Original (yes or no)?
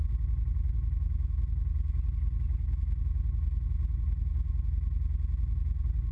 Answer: yes